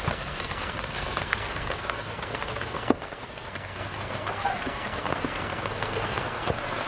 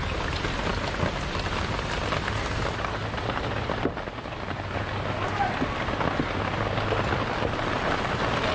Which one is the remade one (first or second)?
first